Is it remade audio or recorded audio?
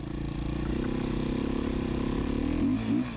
recorded